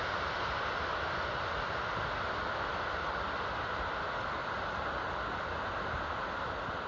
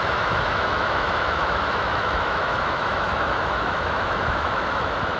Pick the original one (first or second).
first